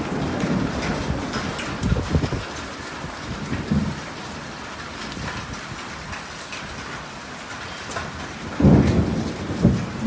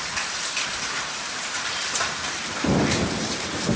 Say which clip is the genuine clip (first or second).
first